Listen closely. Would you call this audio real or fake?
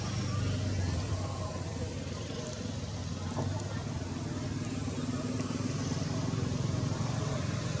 real